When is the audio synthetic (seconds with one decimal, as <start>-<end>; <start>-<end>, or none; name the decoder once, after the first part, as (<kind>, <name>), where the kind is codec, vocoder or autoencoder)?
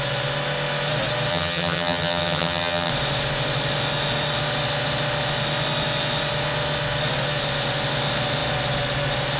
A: 1.3-2.9 (vocoder, HiFi-GAN)